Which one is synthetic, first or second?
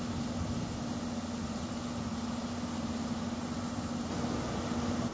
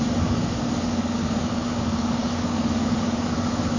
second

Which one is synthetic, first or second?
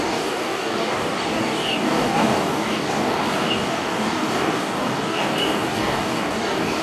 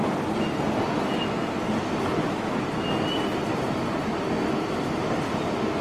first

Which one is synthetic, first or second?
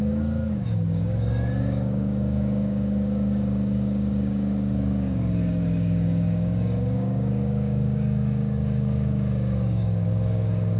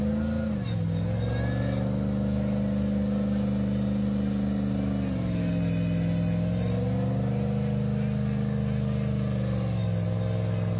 first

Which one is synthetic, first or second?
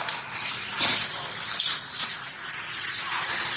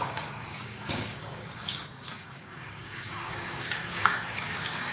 second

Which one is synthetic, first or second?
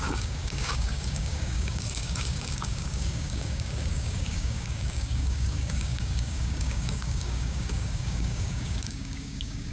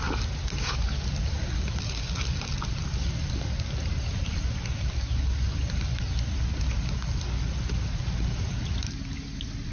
first